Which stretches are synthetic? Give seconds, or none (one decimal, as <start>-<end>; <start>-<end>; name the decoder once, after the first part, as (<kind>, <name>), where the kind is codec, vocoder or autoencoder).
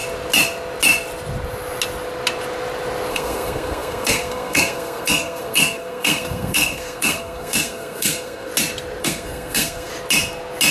3.1-8.5 (codec, SNAC); 9.0-9.9